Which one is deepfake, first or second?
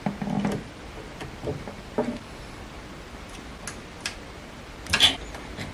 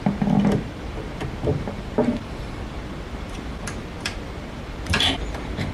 second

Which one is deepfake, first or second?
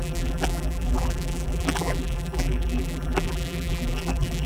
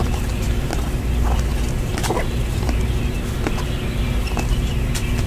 first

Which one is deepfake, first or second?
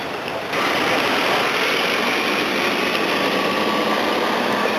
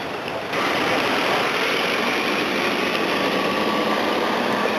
second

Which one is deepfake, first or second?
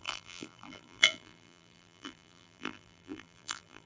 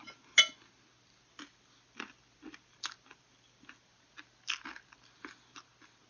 first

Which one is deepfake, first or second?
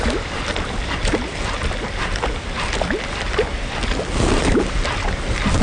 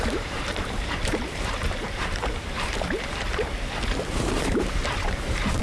second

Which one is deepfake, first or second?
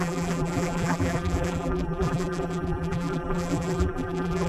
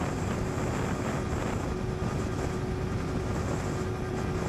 first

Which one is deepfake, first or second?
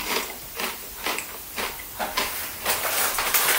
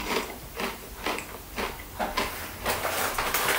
first